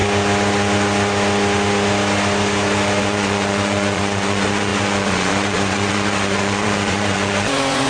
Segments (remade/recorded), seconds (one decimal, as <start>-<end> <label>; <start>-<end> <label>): 0.0-3.0 recorded; 3.0-7.9 remade